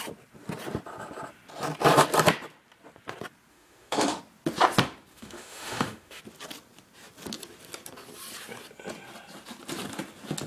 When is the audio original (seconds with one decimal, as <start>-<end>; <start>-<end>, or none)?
0.0-3.5; 4.2-5.1; 6.2-10.5